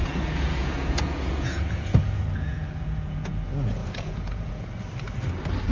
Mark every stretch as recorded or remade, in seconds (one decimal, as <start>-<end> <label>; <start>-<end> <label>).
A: 0.0-3.4 remade; 3.4-3.8 recorded; 3.8-4.7 remade; 4.7-5.7 recorded